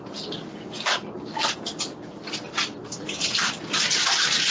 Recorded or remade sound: recorded